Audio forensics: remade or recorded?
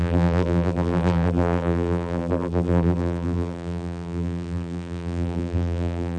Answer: remade